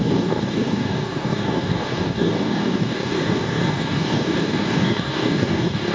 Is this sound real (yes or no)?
no